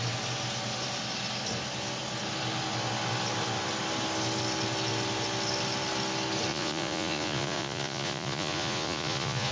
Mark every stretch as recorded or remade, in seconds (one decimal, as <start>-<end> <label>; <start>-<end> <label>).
0.0-6.5 recorded; 6.5-9.5 remade